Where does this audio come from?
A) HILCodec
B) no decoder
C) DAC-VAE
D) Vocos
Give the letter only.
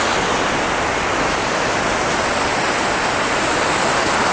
B